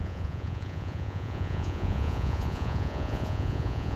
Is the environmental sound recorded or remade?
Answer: remade